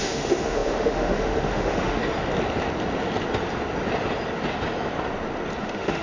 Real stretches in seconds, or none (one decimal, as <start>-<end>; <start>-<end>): 2.0-5.6